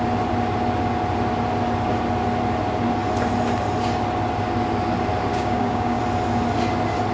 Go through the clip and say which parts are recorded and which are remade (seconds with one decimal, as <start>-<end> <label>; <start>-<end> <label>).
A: 0.0-5.3 recorded; 5.3-6.0 remade; 6.0-7.1 recorded